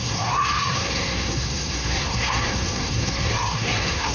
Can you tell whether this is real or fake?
fake